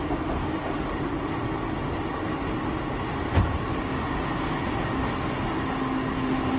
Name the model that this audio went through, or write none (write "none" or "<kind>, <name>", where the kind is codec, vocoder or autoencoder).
none